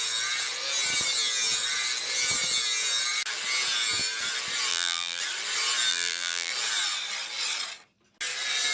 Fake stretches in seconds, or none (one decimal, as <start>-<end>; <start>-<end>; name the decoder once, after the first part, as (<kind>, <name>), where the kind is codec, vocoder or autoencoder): 4.7-5.2 (vocoder, BigVGAN v2); 5.9-6.5